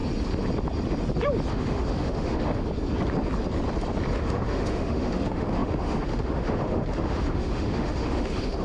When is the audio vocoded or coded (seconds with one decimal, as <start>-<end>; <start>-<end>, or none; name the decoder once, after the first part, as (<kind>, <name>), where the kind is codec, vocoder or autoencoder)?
1.5-2.7 (autoencoder, DAC-VAE); 4.2-8.6